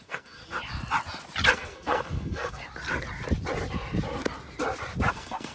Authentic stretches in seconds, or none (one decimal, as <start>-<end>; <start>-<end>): 0.4-1.5; 2.6-5.1